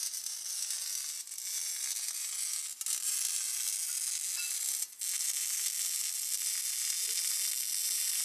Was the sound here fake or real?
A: real